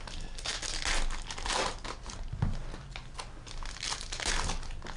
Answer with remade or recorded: recorded